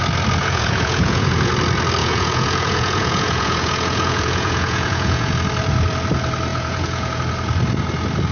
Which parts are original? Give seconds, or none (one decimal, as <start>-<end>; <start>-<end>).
0.0-0.4; 1.5-2.0; 5.3-6.5; 7.2-8.3